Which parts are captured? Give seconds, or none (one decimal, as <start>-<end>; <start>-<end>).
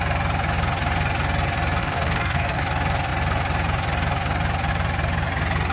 0.0-1.8; 2.6-5.7